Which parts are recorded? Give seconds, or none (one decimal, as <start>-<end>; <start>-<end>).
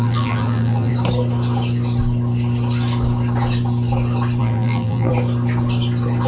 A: 0.9-4.4; 5.1-6.3